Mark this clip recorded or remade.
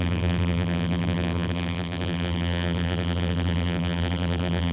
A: remade